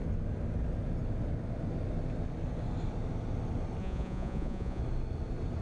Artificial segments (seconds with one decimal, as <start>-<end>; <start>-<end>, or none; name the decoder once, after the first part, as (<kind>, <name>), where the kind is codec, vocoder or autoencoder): 3.8-4.8 (vocoder, Vocos)